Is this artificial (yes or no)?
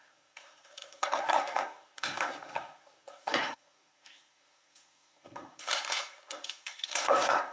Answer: yes